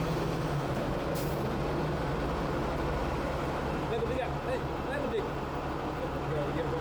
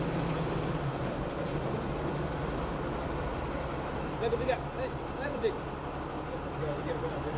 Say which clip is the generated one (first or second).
second